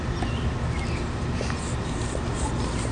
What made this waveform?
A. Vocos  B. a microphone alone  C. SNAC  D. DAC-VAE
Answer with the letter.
B